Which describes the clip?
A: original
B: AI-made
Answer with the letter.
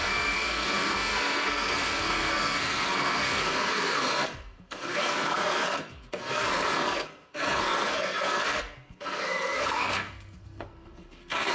B